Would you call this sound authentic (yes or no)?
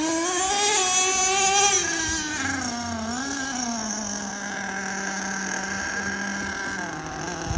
yes